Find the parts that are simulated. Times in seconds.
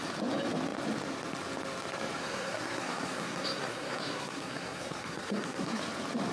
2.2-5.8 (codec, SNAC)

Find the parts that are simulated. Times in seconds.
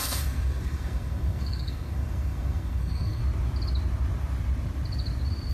0.0-3.2 (codec, SNAC)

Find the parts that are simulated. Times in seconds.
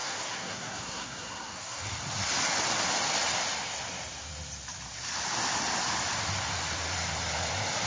0.0-1.8 (codec, SNAC)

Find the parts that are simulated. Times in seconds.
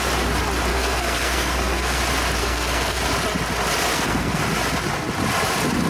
0.7-2.0 (codec, SNAC); 2.4-3.0; 3.9-4.4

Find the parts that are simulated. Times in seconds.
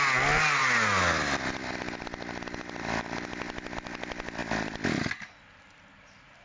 none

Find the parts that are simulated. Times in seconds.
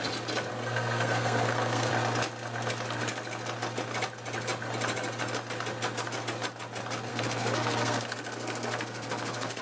0.5-1.9 (codec, SNAC); 7.1-9.6